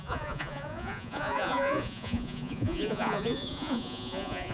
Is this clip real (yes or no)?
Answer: no